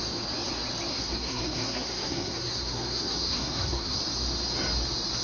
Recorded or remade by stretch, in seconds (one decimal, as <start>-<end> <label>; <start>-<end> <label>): 0.0-0.9 recorded; 0.9-4.0 remade; 4.0-5.2 recorded

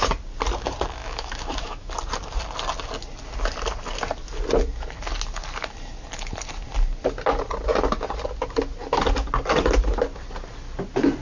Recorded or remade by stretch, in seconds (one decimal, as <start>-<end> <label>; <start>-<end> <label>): 0.0-1.0 recorded; 1.0-1.9 remade; 1.9-11.2 recorded

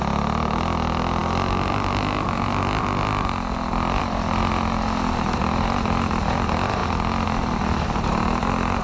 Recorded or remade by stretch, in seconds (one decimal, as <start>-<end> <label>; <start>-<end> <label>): 0.0-8.8 recorded

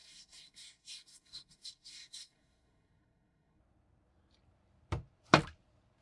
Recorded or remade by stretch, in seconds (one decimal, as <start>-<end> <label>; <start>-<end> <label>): 0.0-3.6 remade; 3.6-6.0 recorded

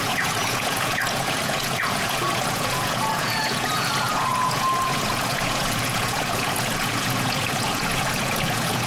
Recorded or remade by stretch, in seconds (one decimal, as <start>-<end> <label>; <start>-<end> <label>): 0.0-8.9 remade